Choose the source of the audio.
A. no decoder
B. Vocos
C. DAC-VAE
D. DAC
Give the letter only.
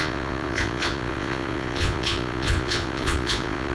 B